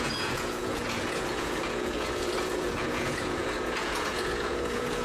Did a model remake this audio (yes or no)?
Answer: yes